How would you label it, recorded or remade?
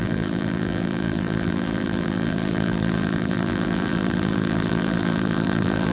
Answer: remade